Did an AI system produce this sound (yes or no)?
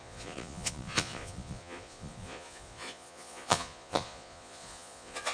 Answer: yes